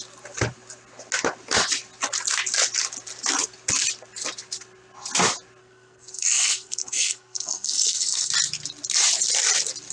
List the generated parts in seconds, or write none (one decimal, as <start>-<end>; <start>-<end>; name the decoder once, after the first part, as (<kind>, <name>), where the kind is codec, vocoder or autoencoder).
5.6-8.3 (codec, SNAC)